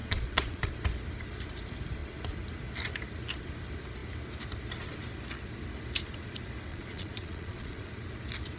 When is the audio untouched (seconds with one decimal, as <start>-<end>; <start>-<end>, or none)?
0.7-6.7; 7.9-8.6